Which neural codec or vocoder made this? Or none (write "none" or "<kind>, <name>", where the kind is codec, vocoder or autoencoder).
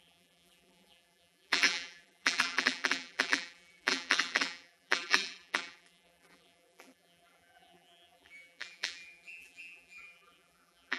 vocoder, BigVGAN v2